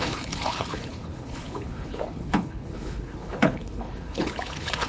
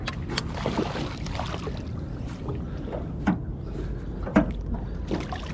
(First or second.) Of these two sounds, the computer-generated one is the first